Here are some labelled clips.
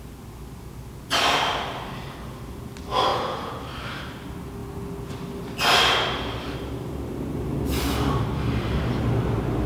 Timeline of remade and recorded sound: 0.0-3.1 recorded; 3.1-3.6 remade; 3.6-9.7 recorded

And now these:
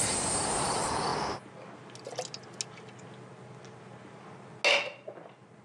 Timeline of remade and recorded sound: 0.0-5.6 recorded

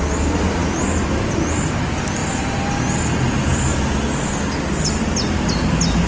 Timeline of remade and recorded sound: 0.0-6.1 recorded

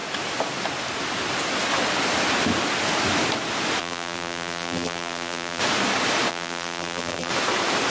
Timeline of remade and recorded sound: 0.0-3.8 recorded; 3.8-5.6 remade; 5.6-6.3 recorded; 6.3-7.3 remade; 7.3-7.9 recorded

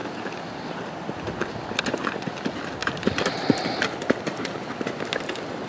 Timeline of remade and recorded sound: 0.0-2.2 remade; 2.2-2.8 recorded; 2.8-4.6 remade; 4.6-5.7 recorded

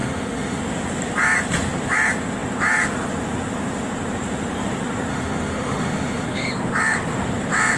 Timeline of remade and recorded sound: 0.0-0.6 remade; 0.6-5.1 recorded; 5.1-6.5 remade; 6.5-7.8 recorded

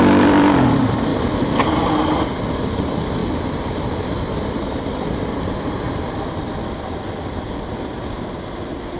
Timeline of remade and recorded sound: 0.0-3.2 recorded; 3.2-8.1 remade; 8.1-9.0 recorded